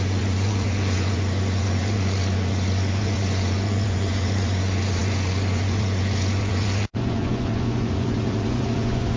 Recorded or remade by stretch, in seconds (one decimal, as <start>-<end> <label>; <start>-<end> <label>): 0.0-9.2 remade